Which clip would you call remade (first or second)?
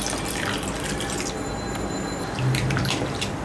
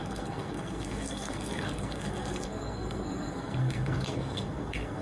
second